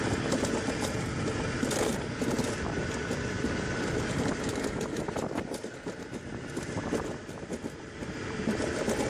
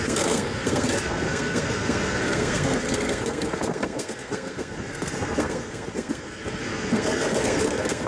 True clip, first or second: first